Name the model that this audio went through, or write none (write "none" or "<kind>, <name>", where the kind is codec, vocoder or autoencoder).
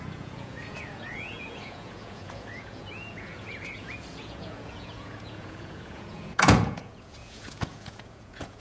vocoder, Vocos